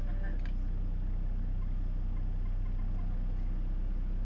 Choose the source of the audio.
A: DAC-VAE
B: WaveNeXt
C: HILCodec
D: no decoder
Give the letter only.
D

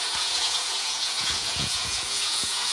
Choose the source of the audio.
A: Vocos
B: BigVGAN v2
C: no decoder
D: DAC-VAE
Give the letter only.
A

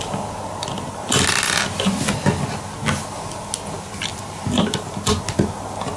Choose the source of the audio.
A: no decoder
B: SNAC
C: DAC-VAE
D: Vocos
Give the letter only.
A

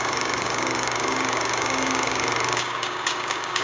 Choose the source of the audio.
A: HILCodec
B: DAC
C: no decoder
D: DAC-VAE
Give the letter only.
B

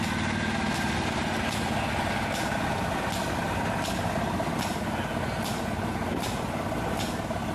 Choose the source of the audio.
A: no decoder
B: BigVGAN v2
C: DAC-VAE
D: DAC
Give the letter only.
A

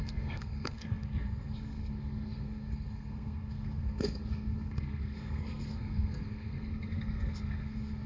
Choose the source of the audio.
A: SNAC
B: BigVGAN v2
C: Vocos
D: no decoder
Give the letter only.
A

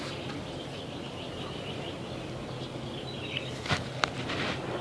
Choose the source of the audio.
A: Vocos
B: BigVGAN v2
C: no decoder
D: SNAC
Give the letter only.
B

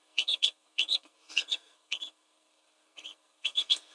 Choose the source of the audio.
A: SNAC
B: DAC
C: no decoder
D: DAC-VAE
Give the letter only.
A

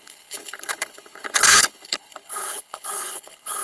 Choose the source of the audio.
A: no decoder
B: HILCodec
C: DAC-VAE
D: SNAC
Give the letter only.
B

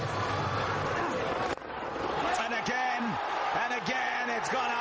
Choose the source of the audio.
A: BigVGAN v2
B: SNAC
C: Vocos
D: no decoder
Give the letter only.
D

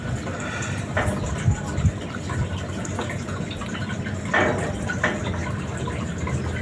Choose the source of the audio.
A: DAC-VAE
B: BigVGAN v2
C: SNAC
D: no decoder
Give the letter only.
D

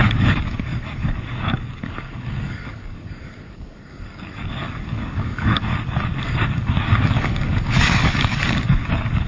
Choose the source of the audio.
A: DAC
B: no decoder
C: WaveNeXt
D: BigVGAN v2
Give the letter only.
A